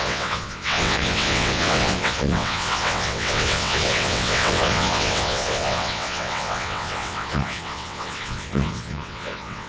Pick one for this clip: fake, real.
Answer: fake